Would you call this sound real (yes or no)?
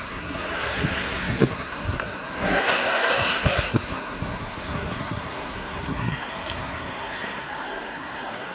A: no